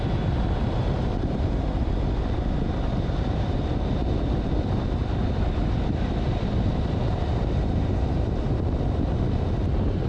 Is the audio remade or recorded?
remade